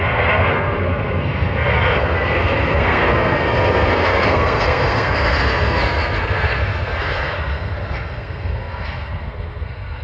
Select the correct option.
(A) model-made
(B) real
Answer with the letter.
A